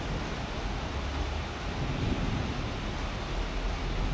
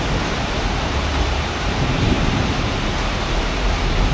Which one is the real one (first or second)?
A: first